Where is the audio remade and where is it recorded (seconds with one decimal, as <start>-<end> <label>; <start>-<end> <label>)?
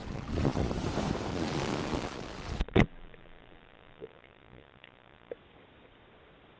0.0-0.7 remade; 0.7-1.3 recorded; 1.3-5.3 remade; 5.3-6.6 recorded